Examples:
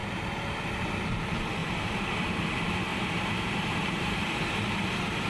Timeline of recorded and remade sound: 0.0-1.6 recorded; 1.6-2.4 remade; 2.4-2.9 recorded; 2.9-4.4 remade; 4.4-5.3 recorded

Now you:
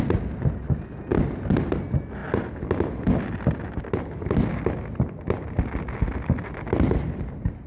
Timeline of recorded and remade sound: 0.0-7.7 recorded

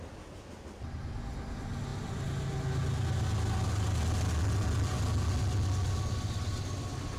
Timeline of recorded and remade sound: 0.0-7.2 recorded